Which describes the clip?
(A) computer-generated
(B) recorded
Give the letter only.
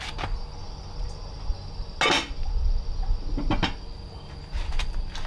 B